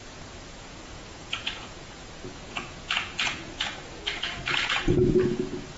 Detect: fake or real fake